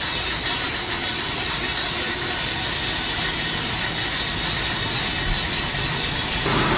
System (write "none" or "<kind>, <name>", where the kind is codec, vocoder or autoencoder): none